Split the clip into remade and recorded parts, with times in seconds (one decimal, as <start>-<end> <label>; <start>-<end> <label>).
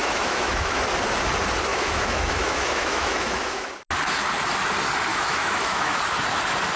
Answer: 0.0-0.8 remade; 0.8-1.7 recorded; 1.7-3.7 remade; 3.7-5.1 recorded; 5.1-6.0 remade; 6.0-6.8 recorded